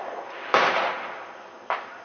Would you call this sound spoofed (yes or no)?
yes